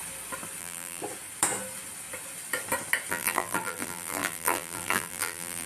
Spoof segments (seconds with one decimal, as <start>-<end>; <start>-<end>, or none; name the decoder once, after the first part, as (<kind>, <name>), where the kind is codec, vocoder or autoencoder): 0.6-1.0 (vocoder, BigVGAN v2); 3.1-5.7